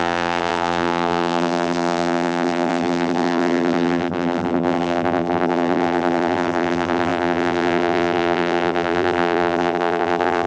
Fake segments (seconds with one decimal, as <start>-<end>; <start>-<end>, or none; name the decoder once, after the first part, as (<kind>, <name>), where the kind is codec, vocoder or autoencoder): 0.0-10.5 (vocoder, BigVGAN v2)

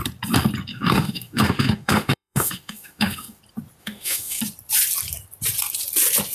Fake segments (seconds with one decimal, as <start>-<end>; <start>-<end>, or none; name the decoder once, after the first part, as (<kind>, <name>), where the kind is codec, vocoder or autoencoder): 0.7-3.4 (autoencoder, DAC-VAE); 3.8-4.4

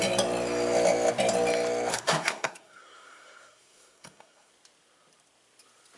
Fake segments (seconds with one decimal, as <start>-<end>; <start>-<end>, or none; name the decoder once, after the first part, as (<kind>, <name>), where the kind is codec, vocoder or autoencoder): 1.9-4.5 (codec, SNAC)

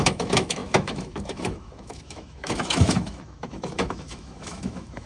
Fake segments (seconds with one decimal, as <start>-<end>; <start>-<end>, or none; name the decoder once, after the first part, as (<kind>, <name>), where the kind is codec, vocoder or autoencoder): 0.0-5.1 (autoencoder, DAC-VAE)

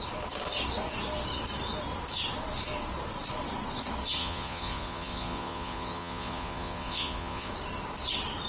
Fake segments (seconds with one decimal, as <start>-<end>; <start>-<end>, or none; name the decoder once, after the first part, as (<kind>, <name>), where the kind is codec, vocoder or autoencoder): 4.2-7.5 (vocoder, Vocos)

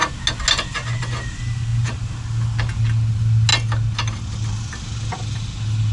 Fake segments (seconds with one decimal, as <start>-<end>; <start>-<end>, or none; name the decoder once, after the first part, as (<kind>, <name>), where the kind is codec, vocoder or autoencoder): none